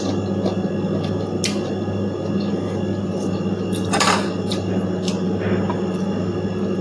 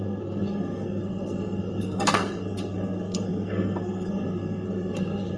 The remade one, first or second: second